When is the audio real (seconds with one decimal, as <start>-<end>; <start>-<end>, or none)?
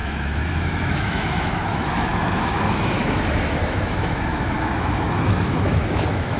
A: none